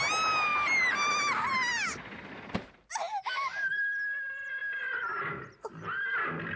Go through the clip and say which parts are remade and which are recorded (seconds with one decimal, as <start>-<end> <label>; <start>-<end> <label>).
0.0-6.6 recorded

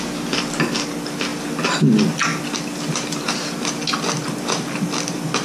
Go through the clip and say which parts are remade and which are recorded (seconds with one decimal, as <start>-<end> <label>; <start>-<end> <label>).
0.0-5.4 recorded

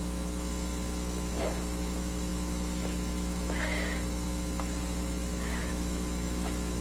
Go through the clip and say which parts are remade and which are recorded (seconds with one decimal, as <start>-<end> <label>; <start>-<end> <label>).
0.0-6.8 remade

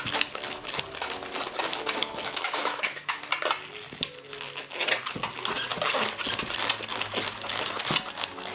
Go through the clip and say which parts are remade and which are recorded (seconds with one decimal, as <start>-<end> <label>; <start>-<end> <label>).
0.0-2.0 recorded; 2.0-3.2 remade; 3.2-8.5 recorded